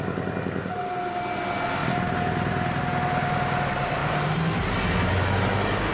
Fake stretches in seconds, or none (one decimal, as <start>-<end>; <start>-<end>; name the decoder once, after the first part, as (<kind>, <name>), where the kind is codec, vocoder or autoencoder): 1.8-2.8 (vocoder, BigVGAN v2); 4.0-4.8